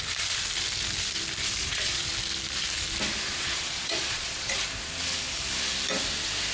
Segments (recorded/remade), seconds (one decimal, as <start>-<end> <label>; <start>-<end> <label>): 0.0-1.6 recorded; 1.6-2.1 remade; 2.1-3.3 recorded; 3.3-4.6 remade; 4.6-6.5 recorded

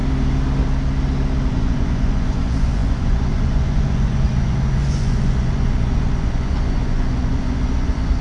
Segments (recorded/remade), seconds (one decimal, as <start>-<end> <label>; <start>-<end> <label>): 0.0-1.5 recorded; 1.5-8.2 remade